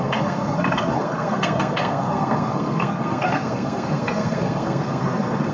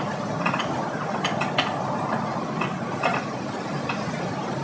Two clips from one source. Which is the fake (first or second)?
first